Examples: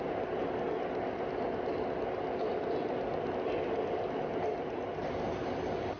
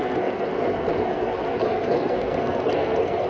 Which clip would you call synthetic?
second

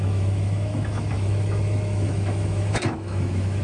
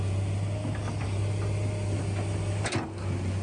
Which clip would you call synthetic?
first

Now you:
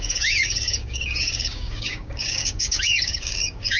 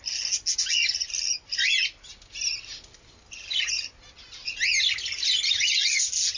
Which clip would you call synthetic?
first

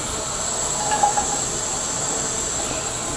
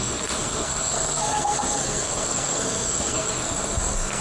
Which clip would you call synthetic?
second